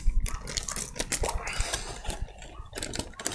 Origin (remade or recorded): remade